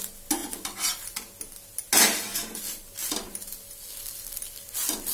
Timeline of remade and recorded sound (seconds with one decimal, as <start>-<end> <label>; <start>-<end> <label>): 0.0-5.1 recorded